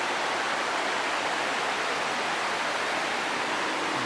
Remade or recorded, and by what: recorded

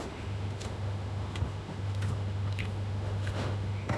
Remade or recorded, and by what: remade, autoencoder, DAC-VAE